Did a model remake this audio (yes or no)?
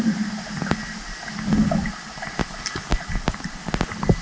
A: no